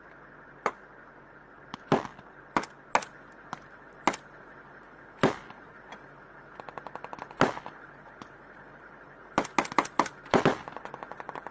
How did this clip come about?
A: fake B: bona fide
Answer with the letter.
B